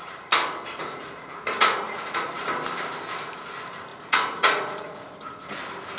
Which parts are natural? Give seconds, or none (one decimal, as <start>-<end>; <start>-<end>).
0.0-0.8; 2.3-3.9; 5.3-6.0